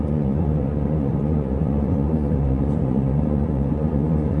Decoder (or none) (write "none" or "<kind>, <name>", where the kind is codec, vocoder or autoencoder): vocoder, Vocos